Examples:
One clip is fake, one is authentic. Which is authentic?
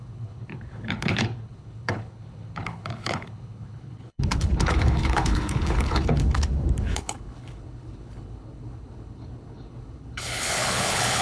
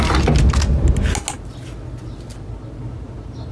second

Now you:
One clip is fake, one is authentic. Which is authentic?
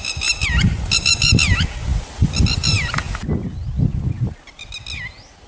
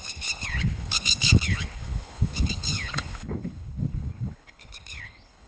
first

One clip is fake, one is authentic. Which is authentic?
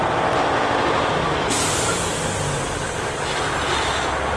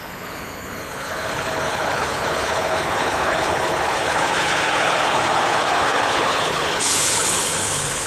first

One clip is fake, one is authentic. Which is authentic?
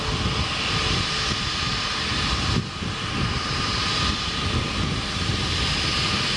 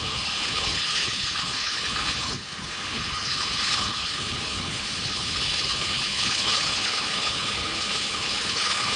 first